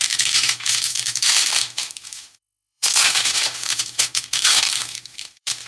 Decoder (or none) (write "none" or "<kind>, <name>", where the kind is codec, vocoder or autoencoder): autoencoder, DAC-VAE